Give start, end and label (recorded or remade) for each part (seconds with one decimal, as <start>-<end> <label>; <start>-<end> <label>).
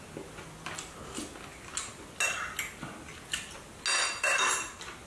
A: 0.0-5.1 recorded